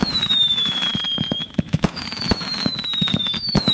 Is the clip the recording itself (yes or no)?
no